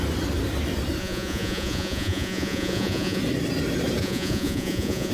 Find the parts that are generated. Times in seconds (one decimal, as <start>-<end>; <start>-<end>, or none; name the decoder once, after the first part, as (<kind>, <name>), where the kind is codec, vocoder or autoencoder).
1.0-3.2 (vocoder, Vocos); 4.0-5.1